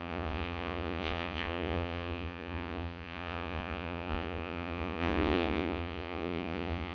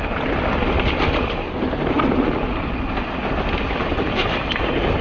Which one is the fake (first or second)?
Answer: first